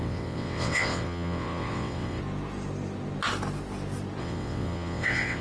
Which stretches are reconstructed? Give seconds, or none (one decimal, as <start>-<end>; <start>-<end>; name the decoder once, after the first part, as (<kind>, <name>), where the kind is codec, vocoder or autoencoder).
0.0-2.2 (vocoder, WaveNeXt); 4.2-5.4